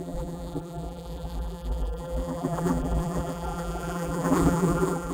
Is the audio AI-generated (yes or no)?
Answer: yes